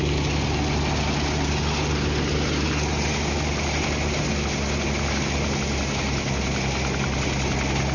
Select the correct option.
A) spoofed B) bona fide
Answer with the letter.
B